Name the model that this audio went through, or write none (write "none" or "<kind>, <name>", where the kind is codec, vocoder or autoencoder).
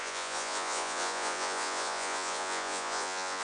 vocoder, Vocos